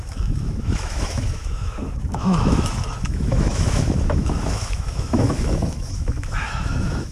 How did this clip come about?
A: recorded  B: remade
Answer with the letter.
B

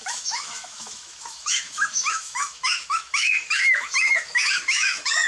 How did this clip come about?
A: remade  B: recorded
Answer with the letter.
A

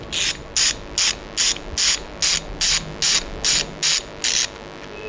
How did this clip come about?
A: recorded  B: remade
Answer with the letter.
A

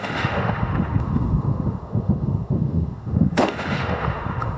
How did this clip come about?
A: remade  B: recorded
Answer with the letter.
A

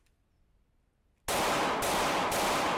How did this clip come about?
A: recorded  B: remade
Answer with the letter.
A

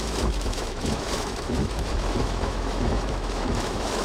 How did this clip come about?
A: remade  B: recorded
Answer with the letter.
A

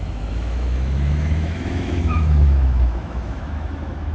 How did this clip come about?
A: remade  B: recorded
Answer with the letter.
A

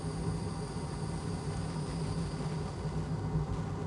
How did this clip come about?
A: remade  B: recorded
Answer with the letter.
B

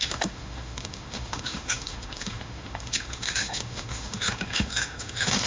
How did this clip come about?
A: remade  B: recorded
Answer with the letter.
A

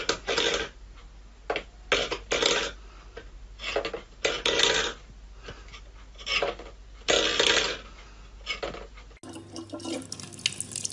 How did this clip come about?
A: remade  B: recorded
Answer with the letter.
B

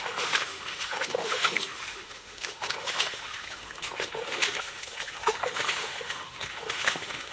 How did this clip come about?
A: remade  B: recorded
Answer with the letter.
A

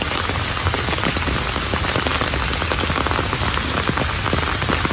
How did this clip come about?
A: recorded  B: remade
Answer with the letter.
A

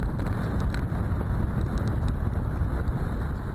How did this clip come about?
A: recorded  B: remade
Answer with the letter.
A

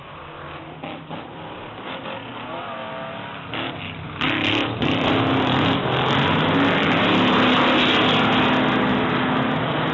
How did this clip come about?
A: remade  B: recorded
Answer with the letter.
B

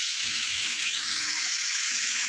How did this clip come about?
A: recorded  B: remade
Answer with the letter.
B